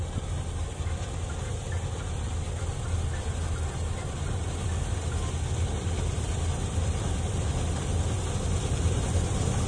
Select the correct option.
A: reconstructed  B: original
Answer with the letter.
B